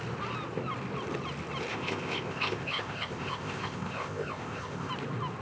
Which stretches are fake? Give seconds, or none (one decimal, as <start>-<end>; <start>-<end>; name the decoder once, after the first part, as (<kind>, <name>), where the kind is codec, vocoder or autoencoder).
1.7-4.9 (codec, ZipCodec)